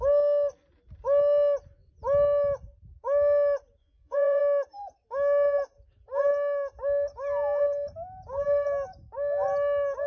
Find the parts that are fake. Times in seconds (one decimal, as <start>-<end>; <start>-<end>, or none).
3.8-4.4